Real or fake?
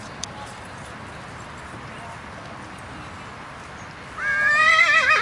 real